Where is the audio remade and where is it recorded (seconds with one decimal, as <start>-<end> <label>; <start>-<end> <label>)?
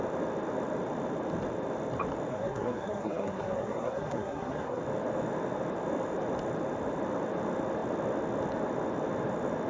0.0-2.3 recorded; 2.3-4.8 remade; 4.8-9.7 recorded